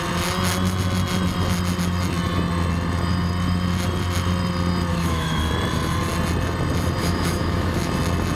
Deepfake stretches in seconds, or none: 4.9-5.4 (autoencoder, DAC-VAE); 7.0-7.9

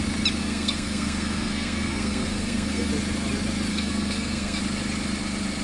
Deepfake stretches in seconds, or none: 0.4-2.9 (codec, SNAC); 3.7-4.6

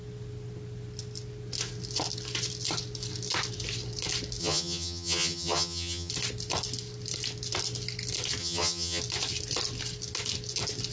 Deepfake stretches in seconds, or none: 4.4-6.1 (vocoder, HiFi-GAN); 8.4-9.0

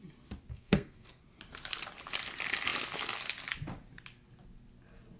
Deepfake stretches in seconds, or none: 0.5-1.2 (codec, SNAC)

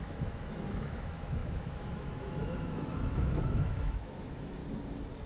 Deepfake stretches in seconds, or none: 0.0-4.6 (autoencoder, DAC-VAE)